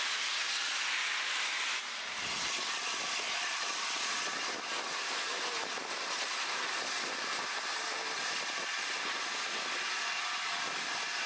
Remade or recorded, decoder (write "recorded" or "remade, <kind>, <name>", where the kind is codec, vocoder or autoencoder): remade, vocoder, BigVGAN v2